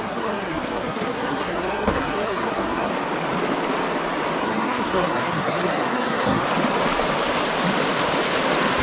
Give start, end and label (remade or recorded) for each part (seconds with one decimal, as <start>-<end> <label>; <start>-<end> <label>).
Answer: 0.0-2.9 remade; 2.9-4.4 recorded; 4.4-6.4 remade; 6.4-8.8 recorded